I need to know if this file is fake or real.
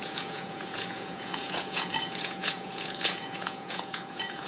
fake